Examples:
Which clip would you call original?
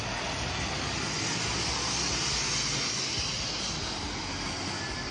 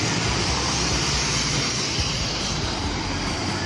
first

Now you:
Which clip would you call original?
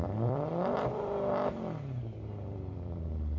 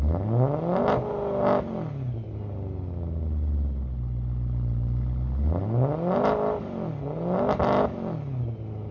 second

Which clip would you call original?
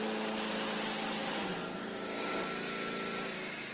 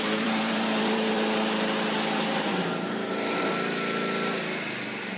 first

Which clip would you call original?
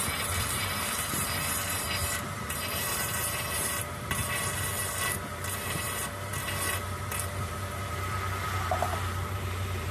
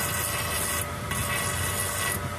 second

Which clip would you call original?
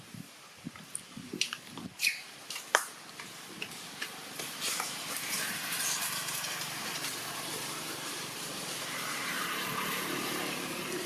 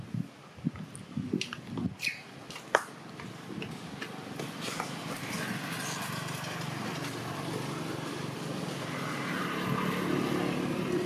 second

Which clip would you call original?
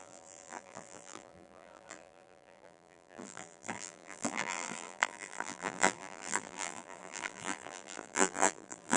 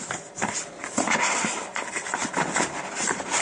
second